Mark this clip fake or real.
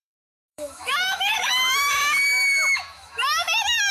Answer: fake